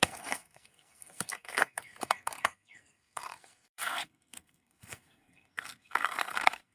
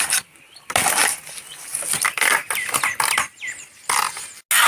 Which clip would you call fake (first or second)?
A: first